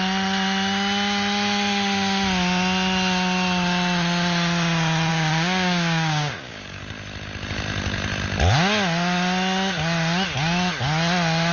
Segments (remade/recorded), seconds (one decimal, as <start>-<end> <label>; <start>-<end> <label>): 0.0-5.1 recorded; 5.1-6.8 remade; 6.8-11.5 recorded